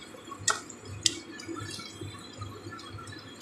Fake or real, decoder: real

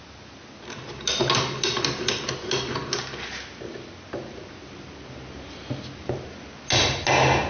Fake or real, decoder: real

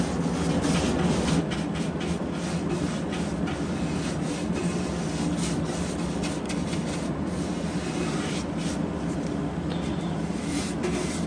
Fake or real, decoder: real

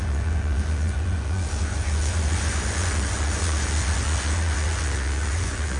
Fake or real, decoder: fake, vocoder, Vocos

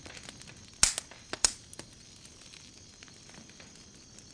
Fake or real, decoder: real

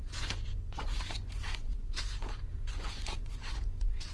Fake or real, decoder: fake, vocoder, Vocos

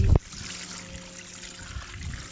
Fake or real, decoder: real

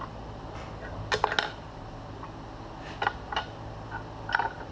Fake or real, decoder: real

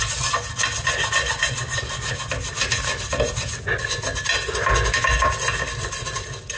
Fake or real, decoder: real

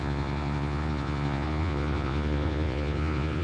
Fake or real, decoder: fake, vocoder, Vocos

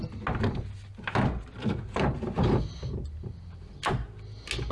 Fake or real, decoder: real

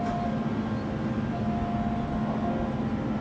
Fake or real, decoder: real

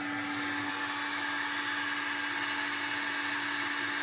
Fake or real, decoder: real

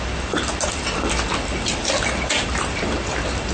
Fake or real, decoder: real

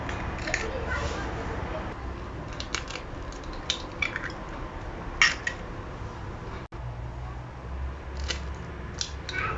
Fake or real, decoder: real